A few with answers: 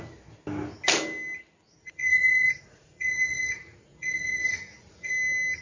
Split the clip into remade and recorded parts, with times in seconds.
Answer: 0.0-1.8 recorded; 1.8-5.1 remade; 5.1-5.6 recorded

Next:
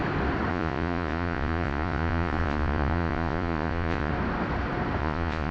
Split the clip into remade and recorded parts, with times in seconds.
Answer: 0.0-0.5 recorded; 0.5-4.1 remade; 4.1-5.0 recorded; 5.0-5.5 remade

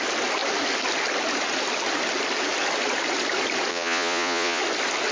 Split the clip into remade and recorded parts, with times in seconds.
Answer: 0.0-3.7 recorded; 3.7-4.6 remade; 4.6-5.1 recorded

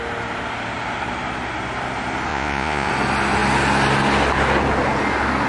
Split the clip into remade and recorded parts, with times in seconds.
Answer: 0.0-2.3 recorded; 2.3-2.9 remade; 2.9-5.5 recorded

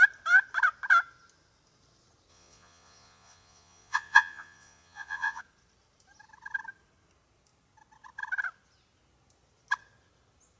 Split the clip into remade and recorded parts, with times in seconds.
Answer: 0.0-2.3 recorded; 2.3-5.4 remade; 5.4-10.6 recorded